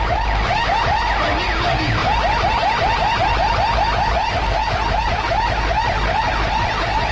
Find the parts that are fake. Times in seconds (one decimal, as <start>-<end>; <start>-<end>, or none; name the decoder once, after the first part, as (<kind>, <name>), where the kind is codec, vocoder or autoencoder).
none